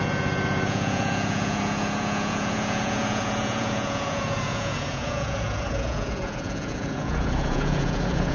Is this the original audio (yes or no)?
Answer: no